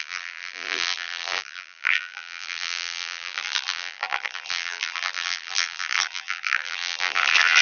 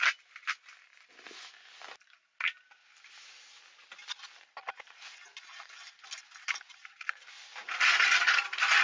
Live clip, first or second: second